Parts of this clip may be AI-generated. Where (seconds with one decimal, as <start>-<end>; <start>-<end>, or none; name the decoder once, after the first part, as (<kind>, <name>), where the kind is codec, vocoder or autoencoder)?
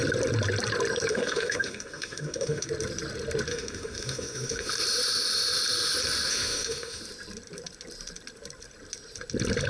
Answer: 1.1-2.7 (autoencoder, DAC-VAE); 3.5-4.7; 6.3-7.0